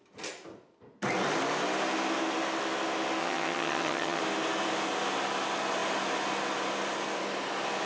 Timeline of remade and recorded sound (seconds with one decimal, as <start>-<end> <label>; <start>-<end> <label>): 0.0-3.2 recorded; 3.2-4.2 remade; 4.2-7.9 recorded